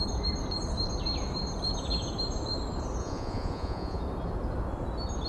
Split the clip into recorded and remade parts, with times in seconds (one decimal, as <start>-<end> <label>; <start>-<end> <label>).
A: 0.0-3.0 recorded; 3.0-4.0 remade; 4.0-5.3 recorded